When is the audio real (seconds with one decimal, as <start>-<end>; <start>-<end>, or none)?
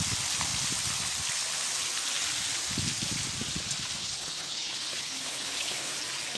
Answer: 0.0-4.0; 6.0-6.4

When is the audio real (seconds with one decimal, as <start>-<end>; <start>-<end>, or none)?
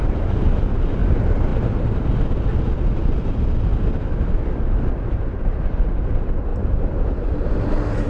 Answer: 0.0-8.1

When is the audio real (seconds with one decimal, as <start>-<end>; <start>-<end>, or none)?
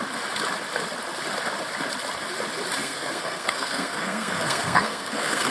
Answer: 0.0-2.8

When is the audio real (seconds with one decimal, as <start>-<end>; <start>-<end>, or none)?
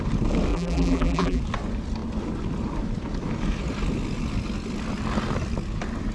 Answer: 0.0-0.5; 1.4-6.1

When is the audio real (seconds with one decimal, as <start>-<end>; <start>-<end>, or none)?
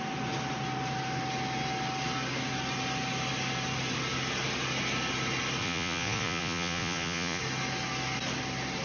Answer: 0.0-5.6; 7.4-8.8